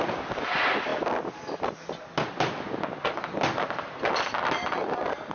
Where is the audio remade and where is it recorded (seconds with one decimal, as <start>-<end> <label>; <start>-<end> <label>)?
0.0-5.3 recorded